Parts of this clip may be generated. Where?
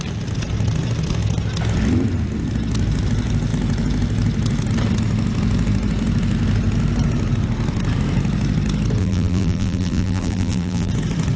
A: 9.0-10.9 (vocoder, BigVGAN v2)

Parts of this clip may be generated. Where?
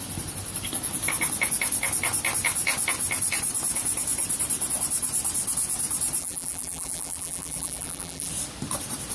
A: 6.2-8.3 (vocoder, BigVGAN v2)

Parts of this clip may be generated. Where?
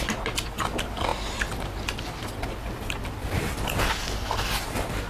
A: none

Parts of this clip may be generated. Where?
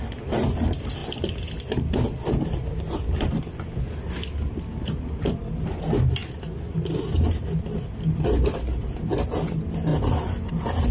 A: 9.9-10.5 (vocoder, BigVGAN v2)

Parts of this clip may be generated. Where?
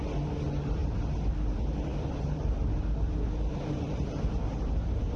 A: 1.9-2.8 (vocoder, BigVGAN v2); 3.5-4.7